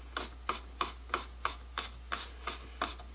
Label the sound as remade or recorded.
recorded